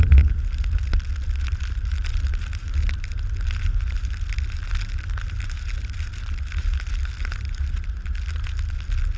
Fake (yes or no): no